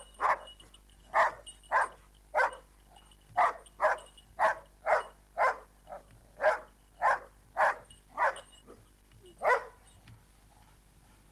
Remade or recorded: recorded